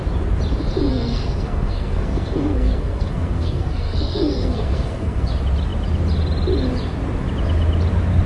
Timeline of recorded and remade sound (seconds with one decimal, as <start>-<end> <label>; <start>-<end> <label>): 0.0-0.9 recorded; 0.9-5.3 remade; 5.3-8.3 recorded